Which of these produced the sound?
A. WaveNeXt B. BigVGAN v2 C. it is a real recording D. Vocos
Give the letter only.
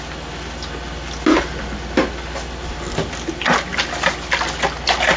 C